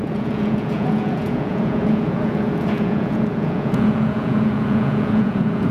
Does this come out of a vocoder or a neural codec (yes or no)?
yes